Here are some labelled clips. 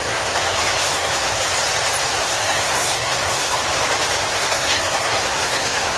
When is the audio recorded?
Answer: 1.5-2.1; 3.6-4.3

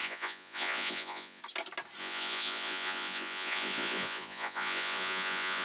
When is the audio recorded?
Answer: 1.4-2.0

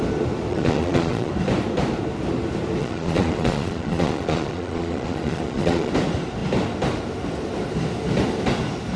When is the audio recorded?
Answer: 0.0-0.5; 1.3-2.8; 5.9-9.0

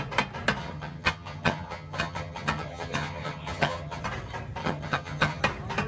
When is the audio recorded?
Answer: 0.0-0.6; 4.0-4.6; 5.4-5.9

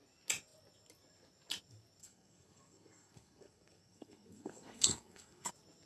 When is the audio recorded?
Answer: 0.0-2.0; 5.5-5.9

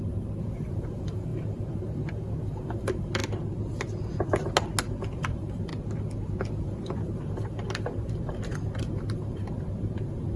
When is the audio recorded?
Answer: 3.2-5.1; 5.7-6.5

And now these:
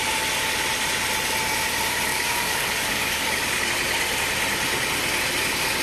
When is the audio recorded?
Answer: 0.0-2.1; 3.7-5.8